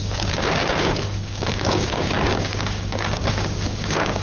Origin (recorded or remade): remade